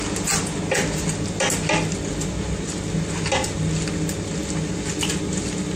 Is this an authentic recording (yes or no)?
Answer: yes